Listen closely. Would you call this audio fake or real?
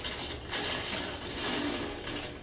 real